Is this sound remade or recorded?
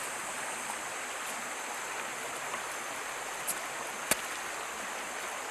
recorded